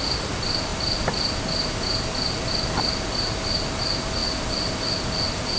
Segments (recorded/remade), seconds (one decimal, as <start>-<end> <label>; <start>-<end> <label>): 0.0-5.6 recorded